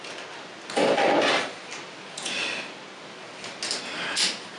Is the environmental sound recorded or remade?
recorded